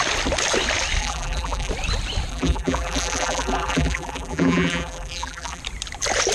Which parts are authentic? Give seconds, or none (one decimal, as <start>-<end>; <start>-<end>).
0.0-1.0; 1.7-2.3; 5.6-6.3